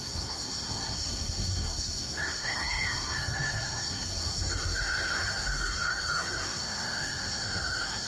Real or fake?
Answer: fake